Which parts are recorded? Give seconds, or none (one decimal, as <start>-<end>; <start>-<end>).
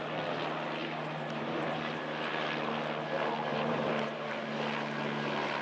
0.0-0.8; 2.0-3.5; 4.3-5.6